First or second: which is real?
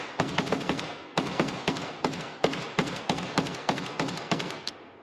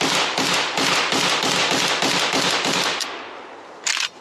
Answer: second